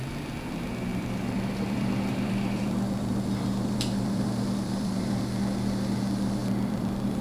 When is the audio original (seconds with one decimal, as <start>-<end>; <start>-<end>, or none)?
0.0-0.9; 5.2-6.4